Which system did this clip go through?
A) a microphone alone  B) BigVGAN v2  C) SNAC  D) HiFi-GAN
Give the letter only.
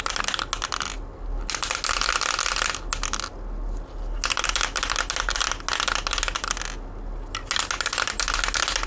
A